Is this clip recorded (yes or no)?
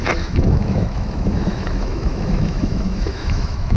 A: no